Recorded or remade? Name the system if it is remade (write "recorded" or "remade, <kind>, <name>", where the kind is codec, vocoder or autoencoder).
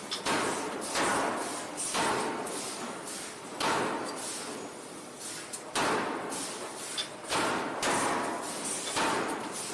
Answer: recorded